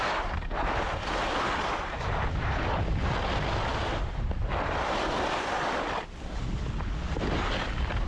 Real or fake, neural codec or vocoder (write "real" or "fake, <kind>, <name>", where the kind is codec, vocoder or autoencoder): real